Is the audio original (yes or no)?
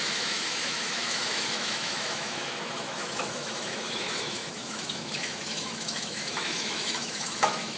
no